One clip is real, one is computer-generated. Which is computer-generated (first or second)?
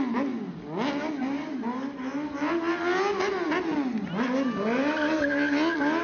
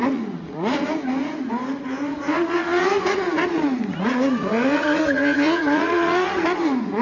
second